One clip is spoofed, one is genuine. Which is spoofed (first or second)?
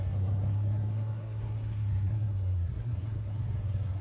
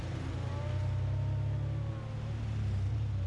first